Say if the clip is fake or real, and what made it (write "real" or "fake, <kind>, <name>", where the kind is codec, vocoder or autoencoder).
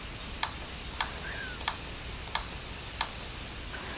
real